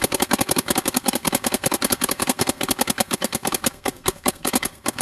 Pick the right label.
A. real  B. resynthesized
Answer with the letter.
B